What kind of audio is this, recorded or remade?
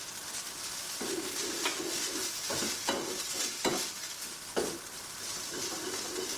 recorded